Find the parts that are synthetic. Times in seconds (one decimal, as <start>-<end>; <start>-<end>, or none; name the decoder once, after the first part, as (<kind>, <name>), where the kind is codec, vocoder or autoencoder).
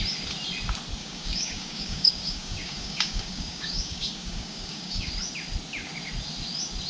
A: 1.0-5.1 (codec, DAC)